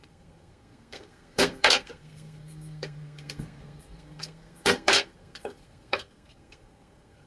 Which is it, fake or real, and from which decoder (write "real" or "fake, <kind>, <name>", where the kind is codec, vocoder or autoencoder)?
fake, codec, SNAC